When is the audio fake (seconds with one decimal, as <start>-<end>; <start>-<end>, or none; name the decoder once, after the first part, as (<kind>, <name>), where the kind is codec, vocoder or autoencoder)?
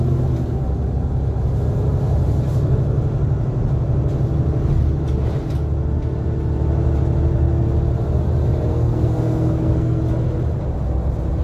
8.7-10.0 (codec, SNAC)